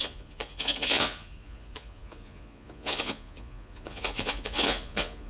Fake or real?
fake